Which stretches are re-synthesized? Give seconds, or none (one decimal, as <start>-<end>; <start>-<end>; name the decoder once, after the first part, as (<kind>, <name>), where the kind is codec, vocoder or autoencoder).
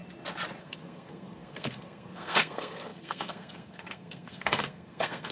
0.6-5.3 (codec, SNAC)